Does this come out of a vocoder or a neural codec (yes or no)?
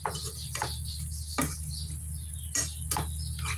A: no